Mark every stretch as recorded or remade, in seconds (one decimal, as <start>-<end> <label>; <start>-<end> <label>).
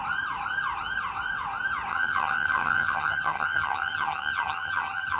0.0-1.9 recorded; 1.9-5.2 remade